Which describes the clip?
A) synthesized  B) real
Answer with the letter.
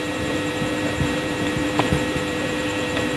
A